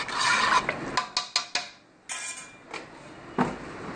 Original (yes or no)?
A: yes